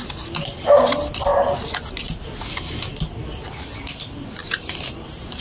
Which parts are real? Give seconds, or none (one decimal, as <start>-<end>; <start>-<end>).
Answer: 0.0-4.4